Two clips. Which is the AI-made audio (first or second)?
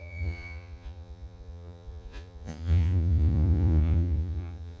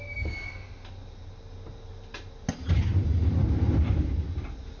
first